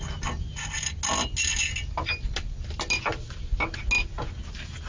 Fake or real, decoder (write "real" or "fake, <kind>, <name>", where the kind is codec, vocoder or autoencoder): real